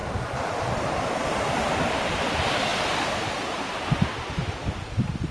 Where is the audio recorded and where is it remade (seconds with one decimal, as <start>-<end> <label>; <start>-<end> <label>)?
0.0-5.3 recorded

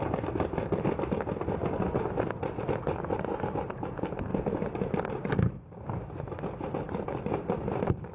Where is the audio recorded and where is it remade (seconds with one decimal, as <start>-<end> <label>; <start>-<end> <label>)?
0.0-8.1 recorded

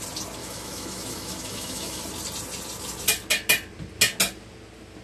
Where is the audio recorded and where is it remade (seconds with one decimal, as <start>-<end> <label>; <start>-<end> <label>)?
0.0-0.4 recorded; 0.4-2.0 remade; 2.0-5.0 recorded

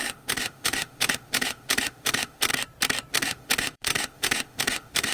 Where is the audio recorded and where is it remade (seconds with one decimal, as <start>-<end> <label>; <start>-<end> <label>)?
0.0-2.5 remade; 2.5-3.1 recorded; 3.1-5.1 remade

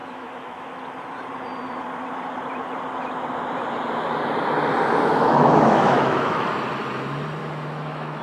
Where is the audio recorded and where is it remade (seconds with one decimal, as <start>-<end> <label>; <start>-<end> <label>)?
0.0-0.7 remade; 0.7-5.1 recorded; 5.1-6.6 remade; 6.6-7.4 recorded; 7.4-8.2 remade

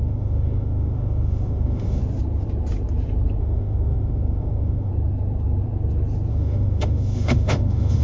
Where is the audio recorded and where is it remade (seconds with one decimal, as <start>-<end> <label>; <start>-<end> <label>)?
0.0-2.0 remade; 2.0-3.4 recorded; 3.4-4.9 remade; 4.9-6.3 recorded; 6.3-8.0 remade

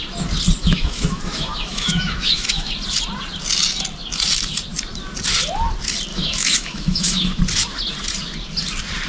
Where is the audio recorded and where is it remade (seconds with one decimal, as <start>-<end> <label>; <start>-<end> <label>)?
0.0-0.6 recorded; 0.6-2.7 remade; 2.7-6.1 recorded; 6.1-7.4 remade; 7.4-9.1 recorded

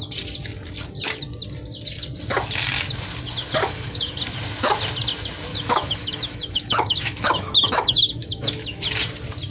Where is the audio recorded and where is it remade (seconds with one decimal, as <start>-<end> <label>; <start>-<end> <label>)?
0.0-3.6 recorded; 3.6-4.2 remade; 4.2-5.5 recorded; 5.5-8.8 remade; 8.8-9.5 recorded